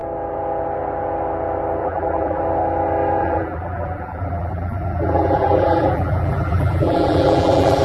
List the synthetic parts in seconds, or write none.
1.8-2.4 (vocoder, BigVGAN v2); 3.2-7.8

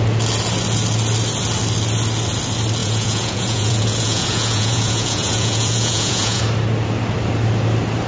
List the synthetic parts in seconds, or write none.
2.8-6.4 (vocoder, Vocos)

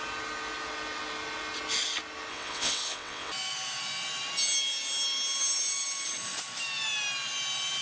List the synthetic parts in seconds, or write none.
2.3-3.3 (vocoder, WaveNeXt)

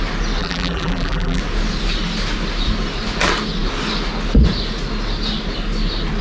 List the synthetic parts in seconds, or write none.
0.4-1.4 (vocoder, BigVGAN v2)